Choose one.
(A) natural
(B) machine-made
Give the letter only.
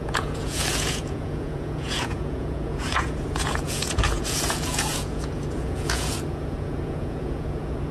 B